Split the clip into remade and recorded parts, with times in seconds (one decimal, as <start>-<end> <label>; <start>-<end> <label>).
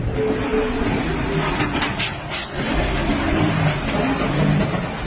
0.0-5.1 recorded